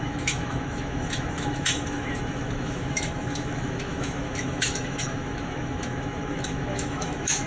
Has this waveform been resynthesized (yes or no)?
yes